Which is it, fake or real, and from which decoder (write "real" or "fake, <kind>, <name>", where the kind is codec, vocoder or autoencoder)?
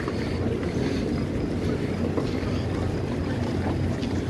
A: real